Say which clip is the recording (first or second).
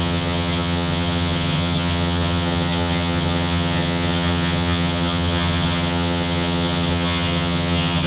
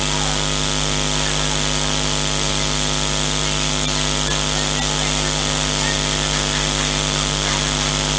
second